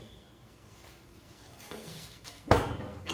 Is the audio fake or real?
fake